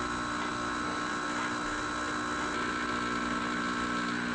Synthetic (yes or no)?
no